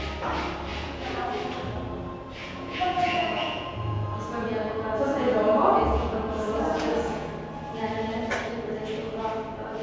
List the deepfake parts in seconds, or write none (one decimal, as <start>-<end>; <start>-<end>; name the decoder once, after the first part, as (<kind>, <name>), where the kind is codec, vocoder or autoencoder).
0.7-1.3 (vocoder, Vocos); 2.4-7.3